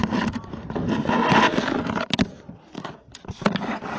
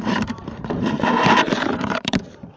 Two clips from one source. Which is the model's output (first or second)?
second